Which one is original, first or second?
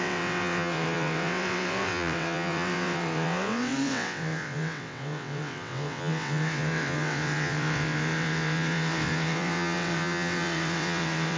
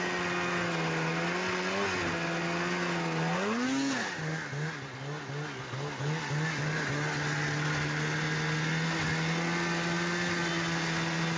second